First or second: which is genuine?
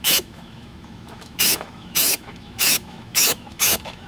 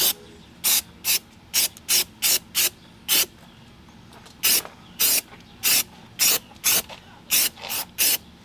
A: second